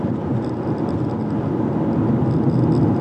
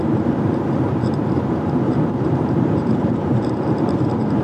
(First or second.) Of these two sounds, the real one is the first